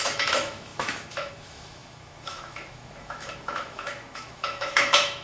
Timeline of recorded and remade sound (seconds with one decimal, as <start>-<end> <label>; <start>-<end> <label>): 0.0-5.2 remade